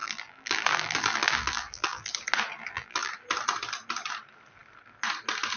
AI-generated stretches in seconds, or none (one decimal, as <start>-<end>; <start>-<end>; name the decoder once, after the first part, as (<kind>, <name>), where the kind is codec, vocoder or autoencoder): 0.0-2.1 (vocoder, BigVGAN v2); 2.6-3.1

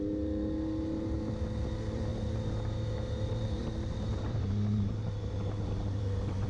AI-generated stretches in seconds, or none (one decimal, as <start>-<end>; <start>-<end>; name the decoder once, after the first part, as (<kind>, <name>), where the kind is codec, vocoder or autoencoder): 2.1-6.0 (vocoder, BigVGAN v2)

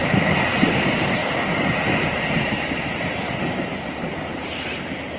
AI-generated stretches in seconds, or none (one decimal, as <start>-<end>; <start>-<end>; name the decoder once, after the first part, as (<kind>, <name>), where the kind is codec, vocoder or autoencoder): 0.7-1.2 (vocoder, BigVGAN v2); 4.3-5.2

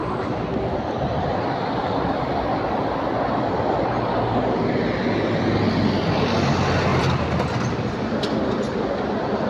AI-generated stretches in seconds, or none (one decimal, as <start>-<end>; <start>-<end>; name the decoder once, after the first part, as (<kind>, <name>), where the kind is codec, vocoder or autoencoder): 0.0-0.8 (vocoder, BigVGAN v2); 6.9-9.1

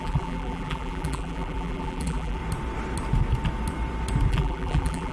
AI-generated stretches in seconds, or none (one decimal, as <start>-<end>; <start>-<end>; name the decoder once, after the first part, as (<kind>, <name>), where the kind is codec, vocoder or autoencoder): 0.0-2.4 (vocoder, BigVGAN v2); 4.3-5.1